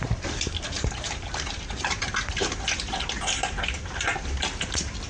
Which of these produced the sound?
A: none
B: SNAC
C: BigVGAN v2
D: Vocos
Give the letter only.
A